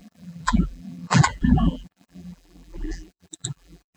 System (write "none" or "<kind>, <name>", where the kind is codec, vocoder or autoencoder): vocoder, BigVGAN v2